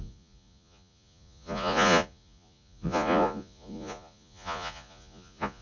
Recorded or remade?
remade